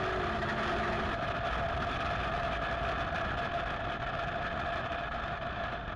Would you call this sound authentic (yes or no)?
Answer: yes